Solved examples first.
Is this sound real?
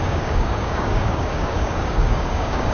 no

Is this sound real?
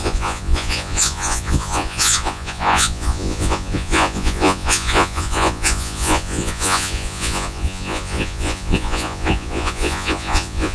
no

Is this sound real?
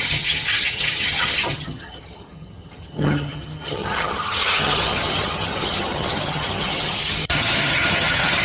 no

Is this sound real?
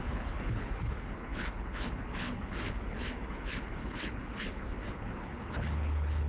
no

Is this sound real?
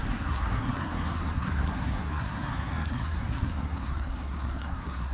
no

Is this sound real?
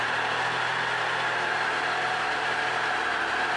yes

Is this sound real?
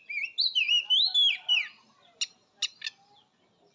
yes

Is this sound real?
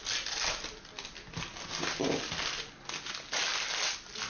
yes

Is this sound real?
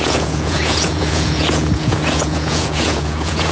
no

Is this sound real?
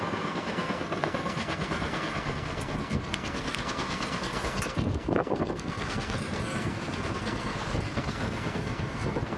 no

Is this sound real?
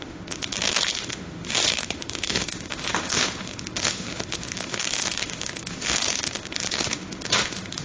no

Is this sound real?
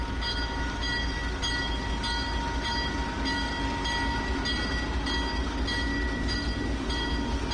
yes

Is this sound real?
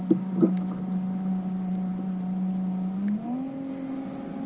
yes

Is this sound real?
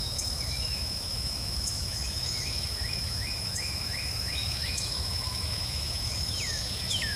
no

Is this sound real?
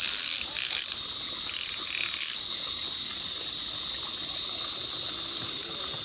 yes